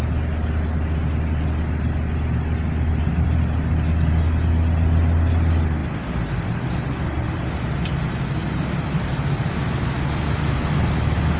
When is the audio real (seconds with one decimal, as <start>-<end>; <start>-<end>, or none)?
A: 0.0-11.4